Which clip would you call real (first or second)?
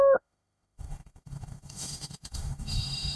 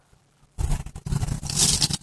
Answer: second